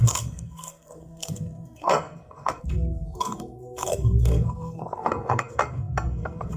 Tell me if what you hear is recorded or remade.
remade